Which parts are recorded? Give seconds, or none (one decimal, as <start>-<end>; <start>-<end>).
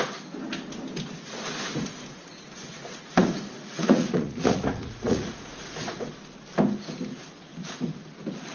0.0-1.7; 6.1-8.5